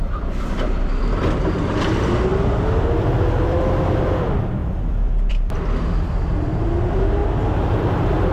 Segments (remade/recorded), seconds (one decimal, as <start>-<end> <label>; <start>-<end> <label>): 0.0-2.3 remade; 2.3-2.9 recorded; 2.9-7.2 remade; 7.2-7.8 recorded; 7.8-8.3 remade